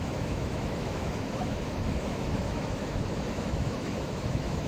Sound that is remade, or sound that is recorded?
remade